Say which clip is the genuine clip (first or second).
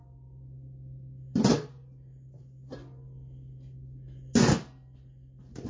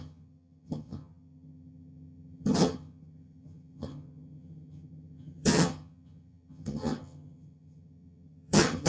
first